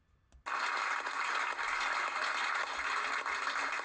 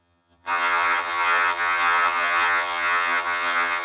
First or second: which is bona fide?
first